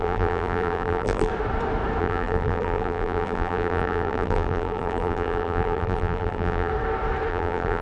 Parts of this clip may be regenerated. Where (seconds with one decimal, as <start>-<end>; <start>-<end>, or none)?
0.0-1.3; 2.0-6.7; 7.3-7.8